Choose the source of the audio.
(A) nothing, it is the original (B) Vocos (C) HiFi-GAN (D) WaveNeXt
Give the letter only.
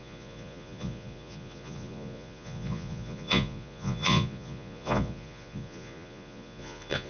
B